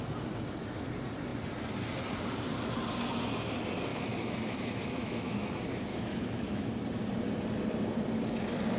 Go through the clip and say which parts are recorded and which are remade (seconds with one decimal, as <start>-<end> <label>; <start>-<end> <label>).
0.0-3.9 recorded; 3.9-5.5 remade; 5.5-5.9 recorded; 5.9-6.7 remade; 6.7-8.8 recorded